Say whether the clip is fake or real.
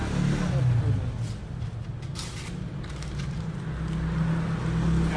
real